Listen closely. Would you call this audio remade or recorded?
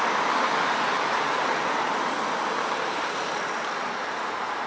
recorded